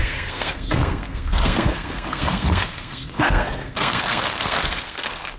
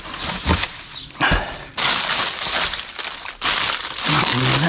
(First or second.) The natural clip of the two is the second